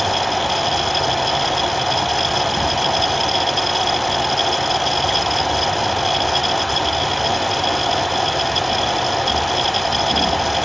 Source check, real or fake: real